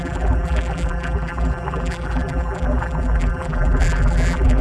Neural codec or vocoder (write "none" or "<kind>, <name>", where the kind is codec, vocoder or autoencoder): vocoder, BigVGAN v2